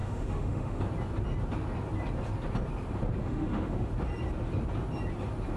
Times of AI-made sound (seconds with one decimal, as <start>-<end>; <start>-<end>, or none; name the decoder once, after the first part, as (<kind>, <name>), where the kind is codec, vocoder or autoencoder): 0.0-0.8 (autoencoder, DAC-VAE); 3.2-3.9